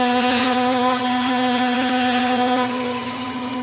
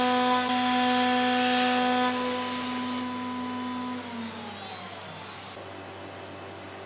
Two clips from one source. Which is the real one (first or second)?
second